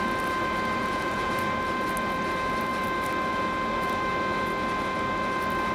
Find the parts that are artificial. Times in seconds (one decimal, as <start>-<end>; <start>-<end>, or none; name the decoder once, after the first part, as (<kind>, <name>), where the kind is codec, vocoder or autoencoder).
0.8-1.3 (vocoder, Vocos)